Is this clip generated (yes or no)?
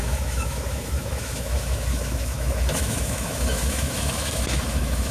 yes